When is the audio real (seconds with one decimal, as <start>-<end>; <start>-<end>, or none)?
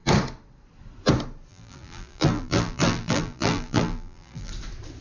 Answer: 0.0-1.5; 4.5-5.0